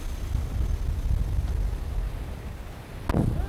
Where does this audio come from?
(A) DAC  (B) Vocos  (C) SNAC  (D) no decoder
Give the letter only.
D